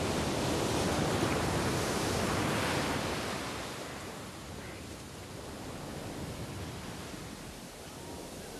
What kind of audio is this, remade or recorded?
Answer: recorded